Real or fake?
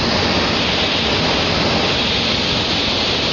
real